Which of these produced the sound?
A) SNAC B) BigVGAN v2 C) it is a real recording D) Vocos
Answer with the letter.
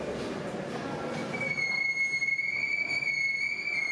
C